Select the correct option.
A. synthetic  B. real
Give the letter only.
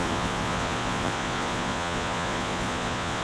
A